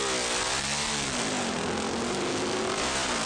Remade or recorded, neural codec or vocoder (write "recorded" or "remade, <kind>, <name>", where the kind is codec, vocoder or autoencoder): recorded